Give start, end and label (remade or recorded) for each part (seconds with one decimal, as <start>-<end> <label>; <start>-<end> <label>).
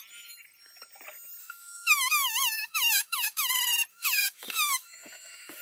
0.0-1.4 recorded; 1.4-3.5 remade; 3.5-3.9 recorded; 3.9-5.6 remade